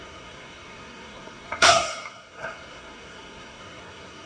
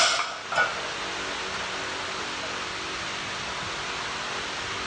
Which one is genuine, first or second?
second